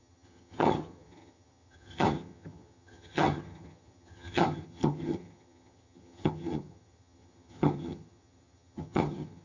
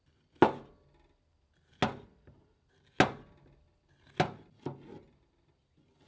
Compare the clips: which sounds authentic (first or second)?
second